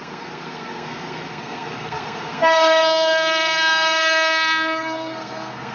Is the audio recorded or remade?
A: remade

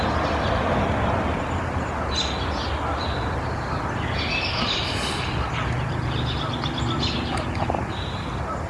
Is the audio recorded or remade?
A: recorded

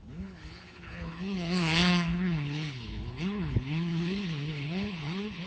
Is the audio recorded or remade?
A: remade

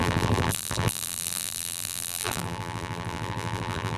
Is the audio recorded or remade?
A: remade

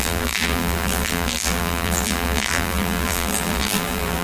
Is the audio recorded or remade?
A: remade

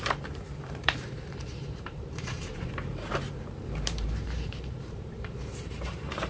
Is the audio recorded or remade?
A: remade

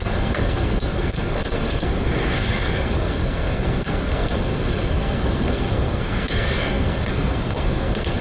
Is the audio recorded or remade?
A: remade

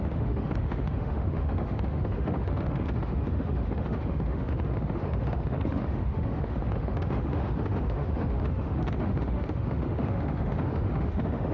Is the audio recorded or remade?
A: remade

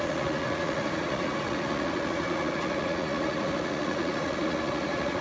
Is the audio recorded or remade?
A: remade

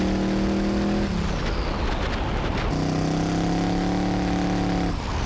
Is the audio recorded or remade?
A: recorded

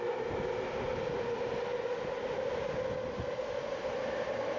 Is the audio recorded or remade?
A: recorded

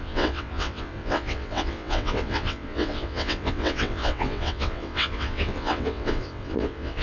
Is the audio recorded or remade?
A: remade